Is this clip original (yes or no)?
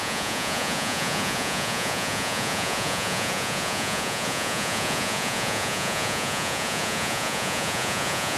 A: no